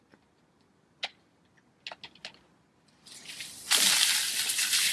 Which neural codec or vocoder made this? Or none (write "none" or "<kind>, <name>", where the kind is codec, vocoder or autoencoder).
none